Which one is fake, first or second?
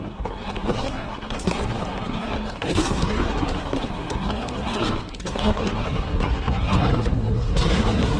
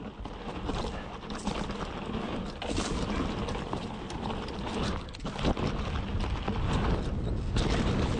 first